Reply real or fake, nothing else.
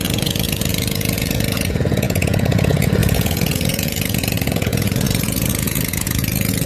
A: fake